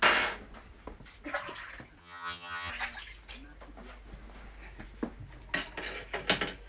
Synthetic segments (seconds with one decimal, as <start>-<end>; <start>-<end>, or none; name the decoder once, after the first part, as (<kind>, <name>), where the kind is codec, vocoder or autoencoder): 2.0-2.7 (vocoder, HiFi-GAN)